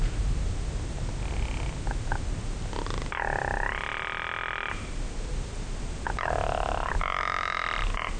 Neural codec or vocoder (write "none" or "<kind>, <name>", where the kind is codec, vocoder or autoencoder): none